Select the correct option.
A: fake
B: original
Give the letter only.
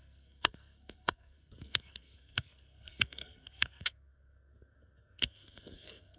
A